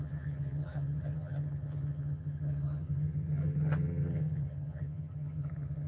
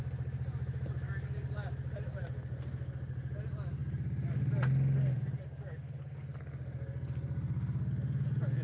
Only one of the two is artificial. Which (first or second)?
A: first